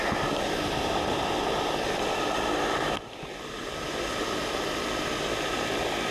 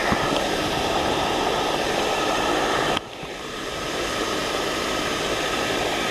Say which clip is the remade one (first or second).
second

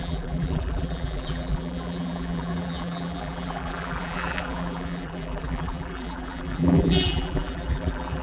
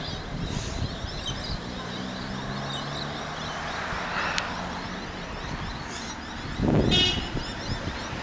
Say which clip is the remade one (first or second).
first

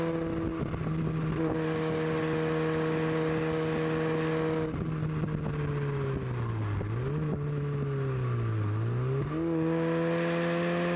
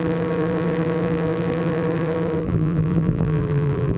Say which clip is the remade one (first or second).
second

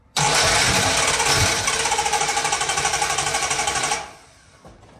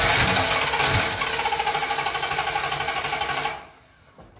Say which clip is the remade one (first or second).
first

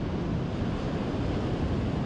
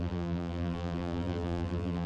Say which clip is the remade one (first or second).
second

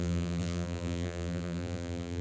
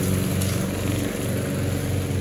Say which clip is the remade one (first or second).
first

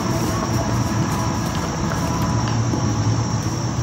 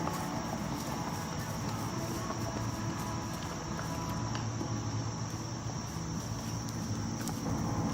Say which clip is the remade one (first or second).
first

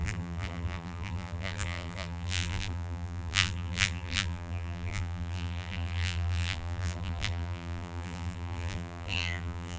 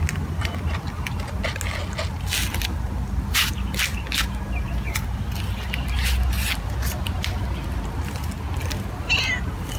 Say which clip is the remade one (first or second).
first